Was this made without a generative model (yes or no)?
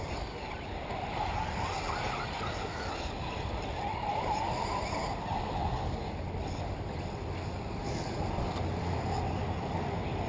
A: yes